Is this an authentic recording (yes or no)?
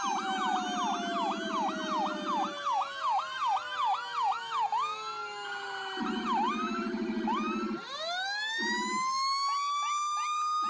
yes